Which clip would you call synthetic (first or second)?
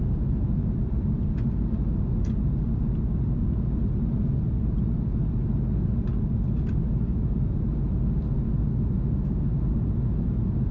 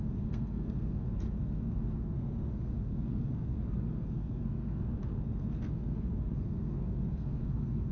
second